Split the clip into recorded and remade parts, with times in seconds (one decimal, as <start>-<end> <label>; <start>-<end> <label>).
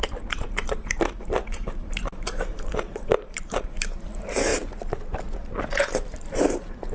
0.0-4.5 remade; 4.5-6.4 recorded; 6.4-6.9 remade